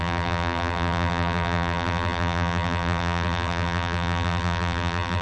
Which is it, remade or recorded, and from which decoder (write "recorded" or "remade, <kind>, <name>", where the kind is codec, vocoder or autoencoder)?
remade, vocoder, BigVGAN v2